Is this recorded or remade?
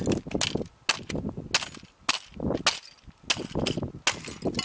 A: recorded